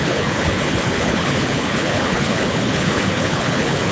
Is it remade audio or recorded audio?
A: remade